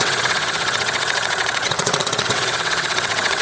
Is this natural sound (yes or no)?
no